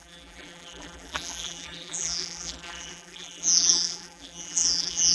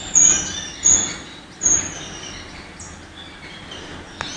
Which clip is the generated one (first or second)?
first